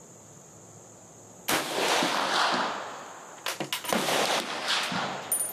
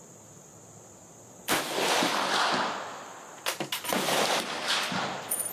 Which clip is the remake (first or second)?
second